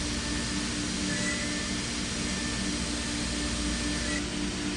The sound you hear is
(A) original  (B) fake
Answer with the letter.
A